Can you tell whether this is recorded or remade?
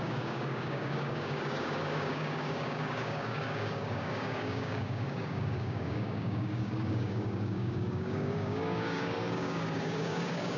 remade